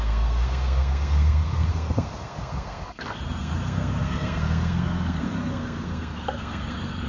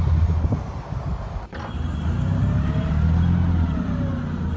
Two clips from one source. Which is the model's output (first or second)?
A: first